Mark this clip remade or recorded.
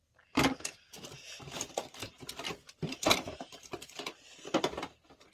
recorded